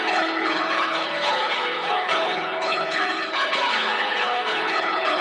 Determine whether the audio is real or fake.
fake